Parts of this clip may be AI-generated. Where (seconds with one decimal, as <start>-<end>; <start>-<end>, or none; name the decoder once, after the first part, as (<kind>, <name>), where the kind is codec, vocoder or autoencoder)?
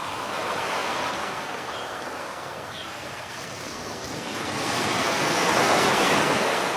0.0-6.8 (codec, SNAC)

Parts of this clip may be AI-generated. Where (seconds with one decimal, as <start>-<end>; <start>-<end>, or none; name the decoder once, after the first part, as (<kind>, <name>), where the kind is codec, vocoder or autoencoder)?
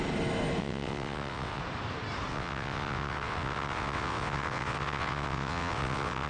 0.6-1.6 (vocoder, WaveNeXt); 2.3-6.3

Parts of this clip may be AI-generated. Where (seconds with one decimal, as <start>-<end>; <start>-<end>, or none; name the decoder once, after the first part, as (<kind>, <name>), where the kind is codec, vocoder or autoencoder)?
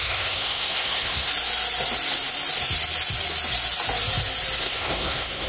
0.0-1.3 (codec, SNAC); 4.6-5.5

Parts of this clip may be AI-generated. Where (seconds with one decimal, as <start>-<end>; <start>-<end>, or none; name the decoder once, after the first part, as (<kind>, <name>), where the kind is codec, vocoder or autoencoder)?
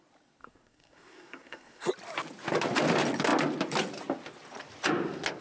0.4-1.9 (codec, SNAC)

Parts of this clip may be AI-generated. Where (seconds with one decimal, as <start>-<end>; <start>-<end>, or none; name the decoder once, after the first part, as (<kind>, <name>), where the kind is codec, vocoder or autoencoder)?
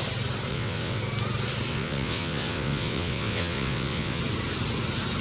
0.5-1.0 (vocoder, WaveNeXt); 1.7-4.2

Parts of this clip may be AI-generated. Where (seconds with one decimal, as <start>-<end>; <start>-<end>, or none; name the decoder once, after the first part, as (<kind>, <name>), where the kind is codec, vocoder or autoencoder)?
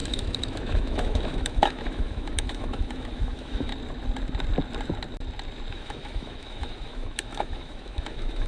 0.0-3.7 (autoencoder, DAC-VAE); 5.7-8.5